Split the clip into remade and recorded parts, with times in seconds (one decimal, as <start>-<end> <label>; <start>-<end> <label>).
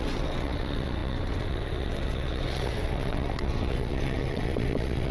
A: 0.0-5.1 remade